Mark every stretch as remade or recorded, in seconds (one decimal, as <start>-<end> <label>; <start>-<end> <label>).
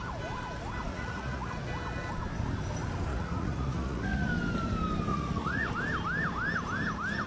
0.0-0.9 recorded; 0.9-1.5 remade; 1.5-3.1 recorded; 3.1-4.3 remade; 4.3-5.1 recorded; 5.1-5.7 remade; 5.7-7.3 recorded